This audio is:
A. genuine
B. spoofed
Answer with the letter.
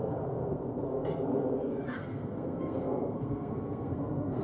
B